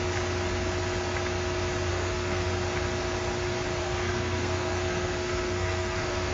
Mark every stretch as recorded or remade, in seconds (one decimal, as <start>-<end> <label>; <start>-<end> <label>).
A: 0.0-1.9 recorded; 1.9-2.5 remade; 2.5-3.8 recorded; 3.8-6.3 remade